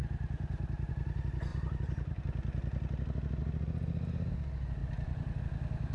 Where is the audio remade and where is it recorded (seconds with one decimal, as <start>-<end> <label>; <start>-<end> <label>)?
0.0-0.9 remade; 0.9-1.5 recorded; 1.5-2.2 remade; 2.2-3.4 recorded; 3.4-4.3 remade; 4.3-4.8 recorded; 4.8-5.4 remade; 5.4-5.9 recorded